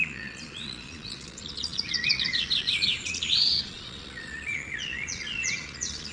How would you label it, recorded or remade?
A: remade